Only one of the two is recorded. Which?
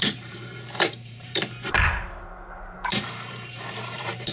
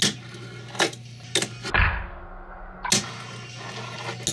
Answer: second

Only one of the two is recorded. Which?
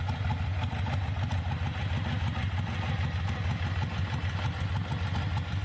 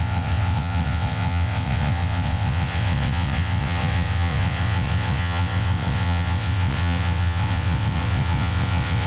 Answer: first